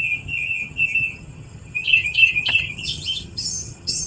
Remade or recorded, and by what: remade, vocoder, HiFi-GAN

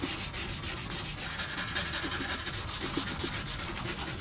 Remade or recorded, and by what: recorded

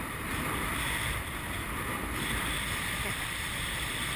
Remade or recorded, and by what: remade, vocoder, BigVGAN v2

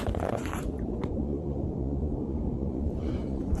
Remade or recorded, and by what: remade, vocoder, Vocos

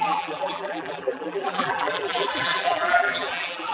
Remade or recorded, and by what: remade, vocoder, BigVGAN v2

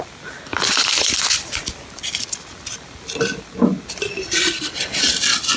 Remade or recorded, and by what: recorded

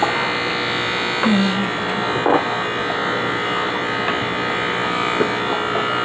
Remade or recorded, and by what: recorded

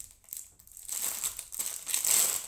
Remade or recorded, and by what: recorded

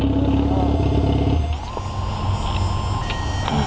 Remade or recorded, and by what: recorded